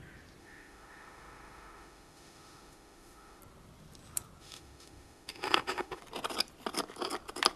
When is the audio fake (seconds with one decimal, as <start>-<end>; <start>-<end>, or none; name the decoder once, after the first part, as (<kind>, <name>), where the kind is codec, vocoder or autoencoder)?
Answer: 0.4-3.4 (autoencoder, DAC-VAE); 4.4-6.0